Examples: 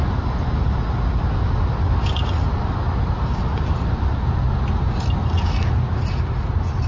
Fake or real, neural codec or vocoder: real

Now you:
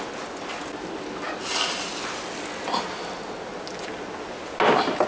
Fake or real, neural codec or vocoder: real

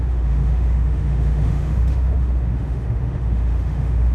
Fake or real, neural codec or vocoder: fake, autoencoder, DAC-VAE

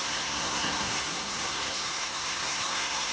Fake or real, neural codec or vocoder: fake, codec, SNAC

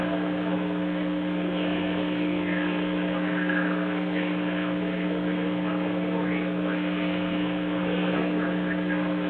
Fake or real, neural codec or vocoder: fake, codec, SNAC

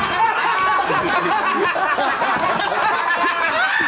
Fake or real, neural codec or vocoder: real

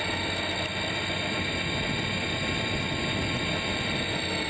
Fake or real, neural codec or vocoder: real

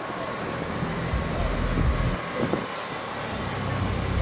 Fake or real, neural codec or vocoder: real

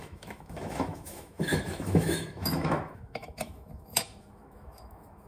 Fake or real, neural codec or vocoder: fake, autoencoder, DAC-VAE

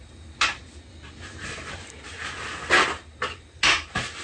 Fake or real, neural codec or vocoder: real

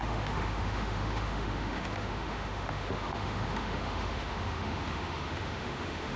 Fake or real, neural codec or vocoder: fake, autoencoder, DAC-VAE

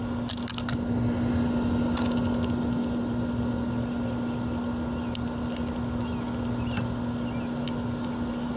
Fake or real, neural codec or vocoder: real